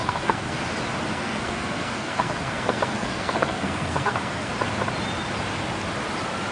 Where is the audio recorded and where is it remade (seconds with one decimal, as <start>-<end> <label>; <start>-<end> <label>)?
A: 0.0-0.6 remade; 0.6-1.1 recorded; 1.1-4.5 remade; 4.5-6.5 recorded